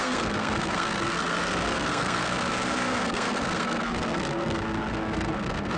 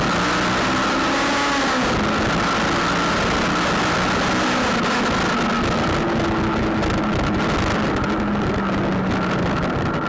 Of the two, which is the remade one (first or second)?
first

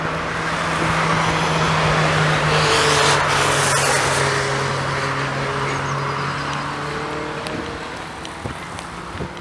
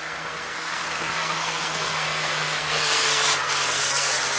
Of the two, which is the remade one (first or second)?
second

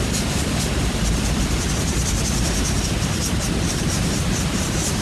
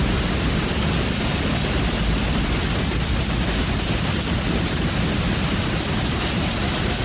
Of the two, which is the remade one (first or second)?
first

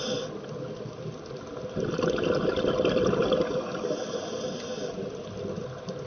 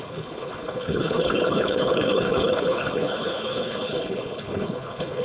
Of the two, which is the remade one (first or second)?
second